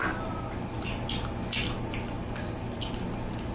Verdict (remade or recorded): recorded